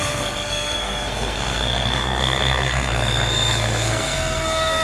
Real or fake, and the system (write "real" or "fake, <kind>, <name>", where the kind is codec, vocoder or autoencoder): fake, codec, SNAC